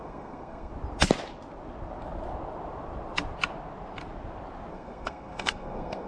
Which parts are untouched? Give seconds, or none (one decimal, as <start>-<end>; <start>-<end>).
0.7-4.7